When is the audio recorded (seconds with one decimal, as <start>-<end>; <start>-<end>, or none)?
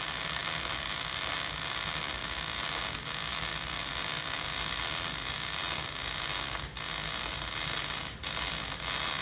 0.0-9.2